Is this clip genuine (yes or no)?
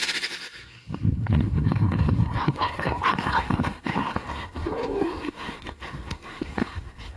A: no